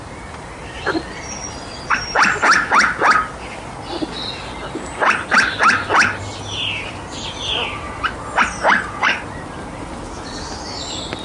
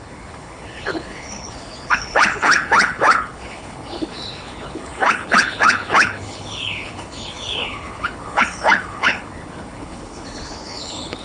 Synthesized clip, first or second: second